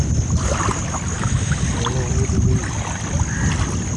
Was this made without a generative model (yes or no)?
yes